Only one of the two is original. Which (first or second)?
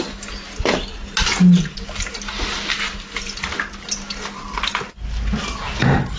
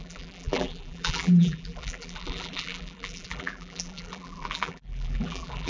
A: first